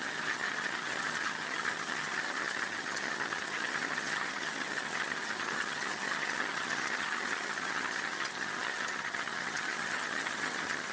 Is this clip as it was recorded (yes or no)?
no